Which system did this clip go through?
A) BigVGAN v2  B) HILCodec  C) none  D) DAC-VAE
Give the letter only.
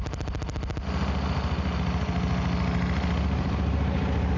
C